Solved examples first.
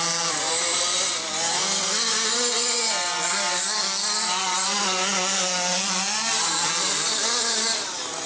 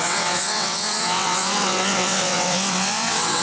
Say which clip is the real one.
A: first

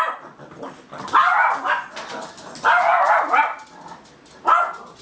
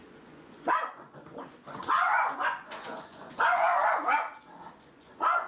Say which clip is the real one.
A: first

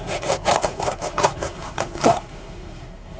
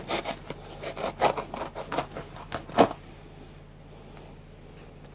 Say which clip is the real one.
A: second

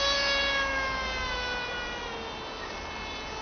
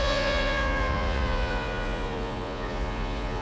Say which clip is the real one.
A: first